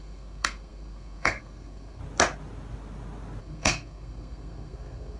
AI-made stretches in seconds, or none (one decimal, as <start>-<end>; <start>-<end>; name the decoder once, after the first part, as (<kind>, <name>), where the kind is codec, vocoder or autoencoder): 0.0-2.0 (codec, SNAC); 3.4-5.2